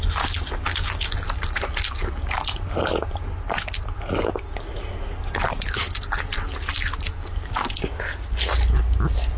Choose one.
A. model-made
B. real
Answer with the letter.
B